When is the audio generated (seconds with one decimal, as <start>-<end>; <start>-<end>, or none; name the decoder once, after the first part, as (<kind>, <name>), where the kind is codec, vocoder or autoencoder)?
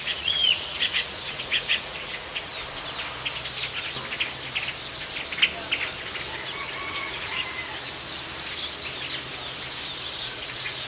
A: 0.0-2.5 (vocoder, Vocos); 6.4-7.6; 10.2-10.9